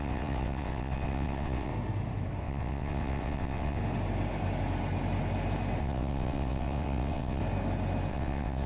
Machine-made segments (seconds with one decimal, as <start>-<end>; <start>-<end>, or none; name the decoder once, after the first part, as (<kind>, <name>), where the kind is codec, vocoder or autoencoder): 0.0-1.7 (vocoder, WaveNeXt); 2.4-3.8; 5.8-7.4; 8.1-8.7